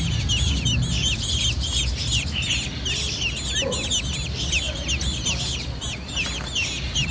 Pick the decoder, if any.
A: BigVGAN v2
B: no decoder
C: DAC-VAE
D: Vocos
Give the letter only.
B